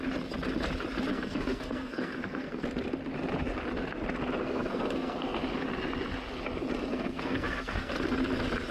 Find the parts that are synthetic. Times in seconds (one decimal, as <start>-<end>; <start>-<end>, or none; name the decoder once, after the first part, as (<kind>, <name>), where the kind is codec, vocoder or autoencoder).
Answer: 1.1-2.6 (codec, SNAC); 4.4-5.4; 6.9-7.9